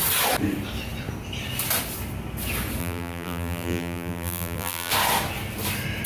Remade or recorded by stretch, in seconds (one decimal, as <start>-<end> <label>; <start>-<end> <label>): 0.0-2.8 recorded; 2.8-4.9 remade; 4.9-6.1 recorded